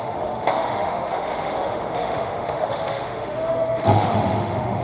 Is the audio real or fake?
fake